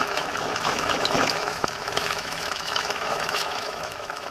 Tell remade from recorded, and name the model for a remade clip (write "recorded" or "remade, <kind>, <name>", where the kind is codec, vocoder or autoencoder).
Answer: remade, autoencoder, DAC-VAE